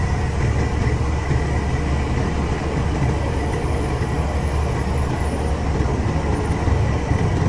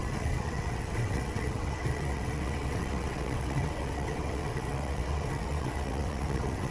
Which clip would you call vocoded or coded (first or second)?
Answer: second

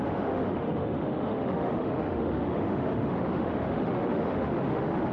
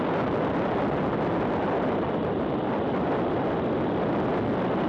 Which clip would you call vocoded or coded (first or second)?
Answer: first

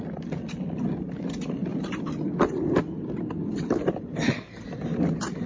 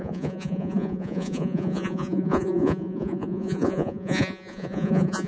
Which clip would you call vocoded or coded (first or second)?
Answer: second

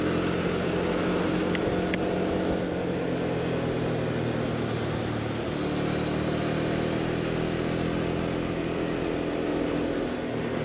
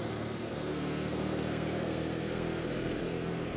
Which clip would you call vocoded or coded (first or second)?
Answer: second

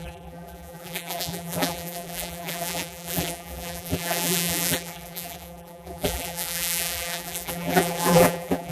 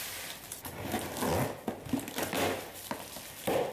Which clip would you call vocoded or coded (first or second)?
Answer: first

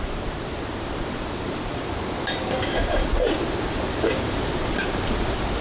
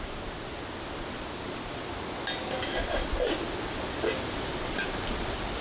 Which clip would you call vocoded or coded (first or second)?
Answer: first